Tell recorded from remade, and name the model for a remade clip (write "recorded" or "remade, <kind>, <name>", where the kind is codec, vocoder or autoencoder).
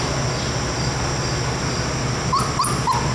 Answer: recorded